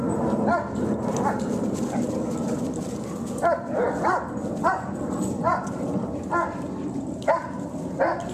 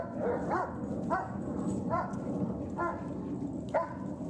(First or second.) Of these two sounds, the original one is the second